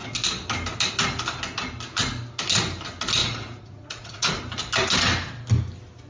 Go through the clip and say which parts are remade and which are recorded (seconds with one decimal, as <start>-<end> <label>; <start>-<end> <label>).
0.0-3.2 recorded; 3.2-4.4 remade; 4.4-6.1 recorded